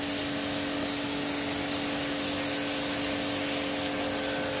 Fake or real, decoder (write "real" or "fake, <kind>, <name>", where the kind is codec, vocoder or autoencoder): real